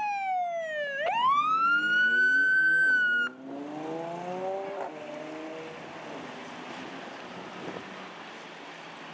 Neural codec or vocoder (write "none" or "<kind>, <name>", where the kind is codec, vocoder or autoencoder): none